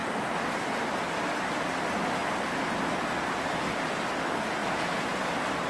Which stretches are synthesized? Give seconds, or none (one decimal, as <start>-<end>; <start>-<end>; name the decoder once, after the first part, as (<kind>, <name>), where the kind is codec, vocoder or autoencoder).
4.6-5.3 (vocoder, Vocos)